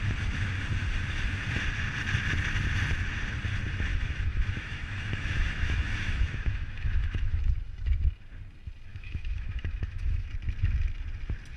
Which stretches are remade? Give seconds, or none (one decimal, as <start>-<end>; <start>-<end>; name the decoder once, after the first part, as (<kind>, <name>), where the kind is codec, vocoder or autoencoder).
3.9-7.4 (autoencoder, DAC-VAE); 8.9-10.3